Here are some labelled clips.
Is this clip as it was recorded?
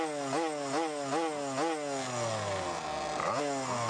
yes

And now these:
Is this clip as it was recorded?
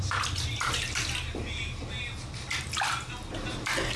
yes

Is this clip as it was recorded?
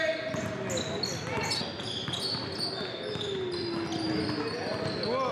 yes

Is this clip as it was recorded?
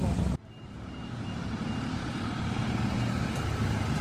yes